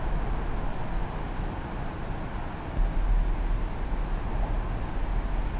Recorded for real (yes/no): yes